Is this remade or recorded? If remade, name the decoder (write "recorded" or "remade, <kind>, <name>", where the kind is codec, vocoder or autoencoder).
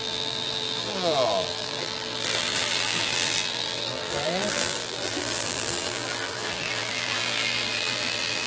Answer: remade, vocoder, BigVGAN v2